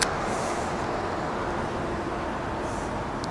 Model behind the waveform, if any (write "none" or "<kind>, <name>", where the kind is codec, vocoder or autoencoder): none